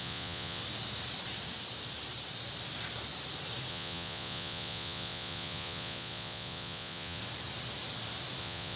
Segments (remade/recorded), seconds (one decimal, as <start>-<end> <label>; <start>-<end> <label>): 0.0-0.6 remade; 0.6-3.7 recorded; 3.7-7.2 remade; 7.2-8.4 recorded; 8.4-8.8 remade